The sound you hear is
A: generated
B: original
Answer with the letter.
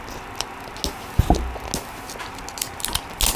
B